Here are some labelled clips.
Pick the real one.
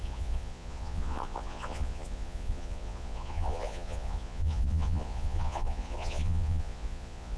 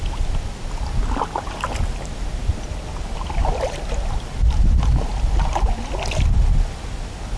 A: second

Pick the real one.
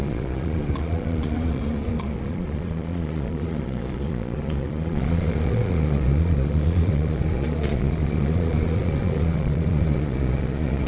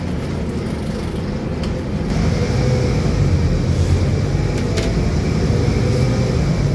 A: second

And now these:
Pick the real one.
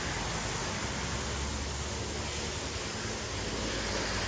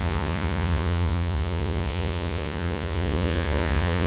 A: first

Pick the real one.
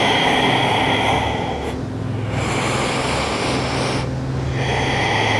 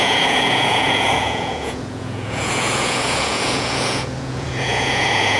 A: first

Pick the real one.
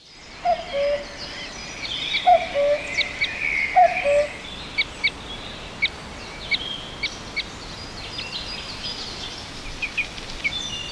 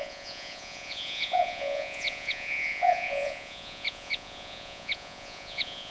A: first